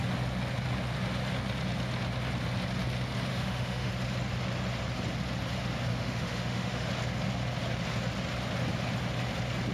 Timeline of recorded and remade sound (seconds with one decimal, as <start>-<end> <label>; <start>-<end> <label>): 0.0-3.3 recorded; 3.3-3.9 remade; 3.9-5.9 recorded; 5.9-6.9 remade; 6.9-9.7 recorded